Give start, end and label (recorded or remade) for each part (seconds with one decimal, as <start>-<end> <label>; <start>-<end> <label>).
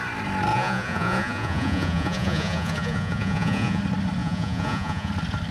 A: 0.0-0.5 recorded; 0.5-3.8 remade; 3.8-4.2 recorded; 4.2-5.1 remade; 5.1-5.5 recorded